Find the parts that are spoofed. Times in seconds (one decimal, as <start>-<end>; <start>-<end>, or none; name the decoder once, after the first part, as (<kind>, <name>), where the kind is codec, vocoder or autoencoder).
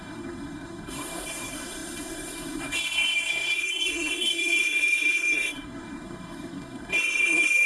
0.0-7.7 (codec, SNAC)